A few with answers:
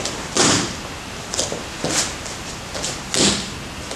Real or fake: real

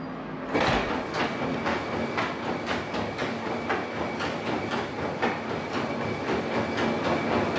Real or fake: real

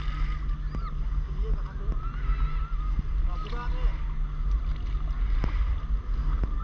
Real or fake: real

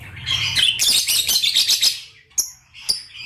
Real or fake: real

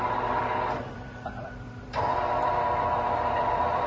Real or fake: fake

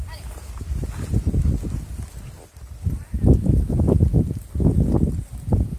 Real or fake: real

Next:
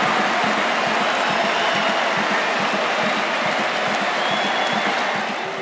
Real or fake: real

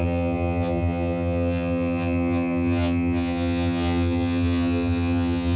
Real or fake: fake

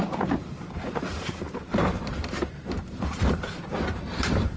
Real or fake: fake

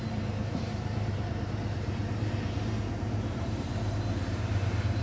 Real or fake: fake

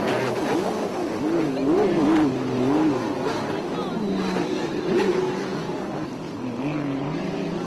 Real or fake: real